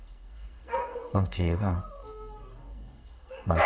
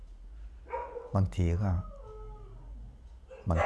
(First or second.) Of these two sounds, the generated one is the first